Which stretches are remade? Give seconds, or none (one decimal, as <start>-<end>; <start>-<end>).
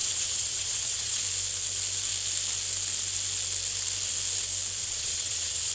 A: 0.0-1.2; 4.8-5.7